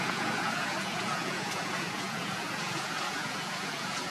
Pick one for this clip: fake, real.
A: fake